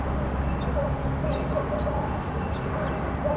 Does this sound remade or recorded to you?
recorded